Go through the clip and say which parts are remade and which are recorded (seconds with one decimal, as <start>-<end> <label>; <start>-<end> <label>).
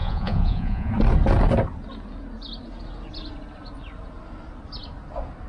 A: 0.0-0.9 remade; 0.9-5.5 recorded